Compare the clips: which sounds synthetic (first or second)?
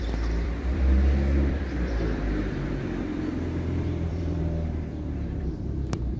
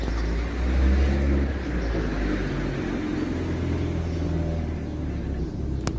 first